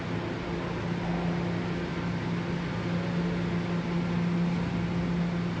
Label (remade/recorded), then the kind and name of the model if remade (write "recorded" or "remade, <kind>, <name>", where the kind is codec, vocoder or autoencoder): recorded